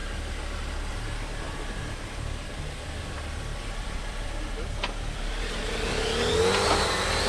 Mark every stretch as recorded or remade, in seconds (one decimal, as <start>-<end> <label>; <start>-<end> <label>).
0.0-3.5 recorded; 3.5-4.4 remade; 4.4-7.3 recorded